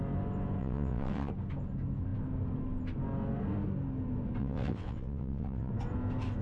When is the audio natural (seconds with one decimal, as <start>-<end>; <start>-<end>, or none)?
0.0-0.6; 1.3-4.4; 5.7-6.4